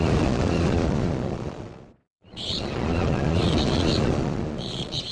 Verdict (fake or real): fake